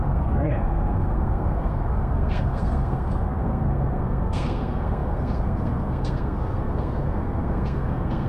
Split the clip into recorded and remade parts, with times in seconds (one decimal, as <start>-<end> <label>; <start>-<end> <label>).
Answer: 0.0-8.3 remade